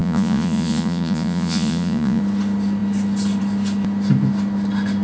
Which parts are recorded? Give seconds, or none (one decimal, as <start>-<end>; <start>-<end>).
2.2-5.0